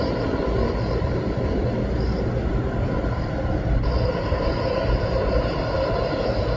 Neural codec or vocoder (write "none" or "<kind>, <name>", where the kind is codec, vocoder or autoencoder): none